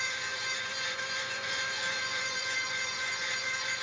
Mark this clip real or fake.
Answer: fake